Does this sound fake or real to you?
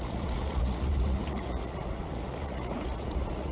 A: fake